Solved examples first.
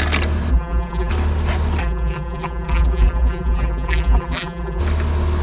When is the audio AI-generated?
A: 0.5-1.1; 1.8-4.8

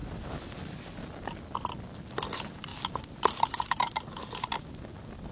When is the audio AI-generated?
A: none

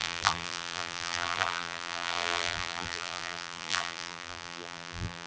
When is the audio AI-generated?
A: 0.0-5.3

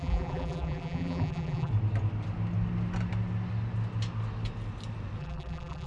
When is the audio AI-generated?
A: 0.0-1.7; 5.2-5.9

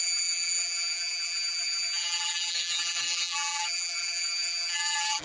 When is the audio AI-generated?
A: 0.0-5.2